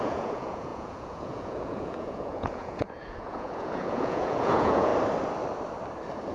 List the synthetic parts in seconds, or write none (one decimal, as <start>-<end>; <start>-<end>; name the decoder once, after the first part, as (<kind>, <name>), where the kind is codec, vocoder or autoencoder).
0.0-4.9 (vocoder, Vocos)